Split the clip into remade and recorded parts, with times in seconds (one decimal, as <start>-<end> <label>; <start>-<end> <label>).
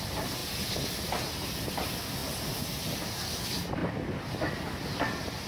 0.0-5.5 recorded